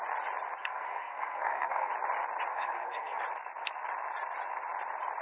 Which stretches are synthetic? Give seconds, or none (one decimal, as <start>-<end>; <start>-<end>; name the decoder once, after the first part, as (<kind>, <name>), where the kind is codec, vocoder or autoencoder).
0.6-1.9 (codec, SNAC); 2.5-3.2